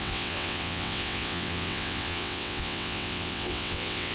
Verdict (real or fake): fake